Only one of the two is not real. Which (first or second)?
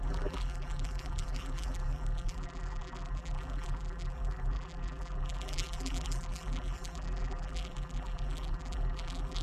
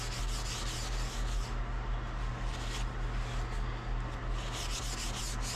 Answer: first